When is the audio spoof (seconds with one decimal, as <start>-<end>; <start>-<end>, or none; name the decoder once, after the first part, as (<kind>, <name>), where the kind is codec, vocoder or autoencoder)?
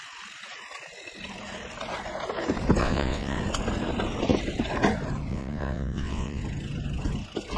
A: 2.8-3.4 (vocoder, WaveNeXt); 5.3-6.4